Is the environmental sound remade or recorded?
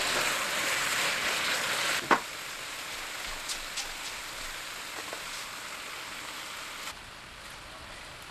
recorded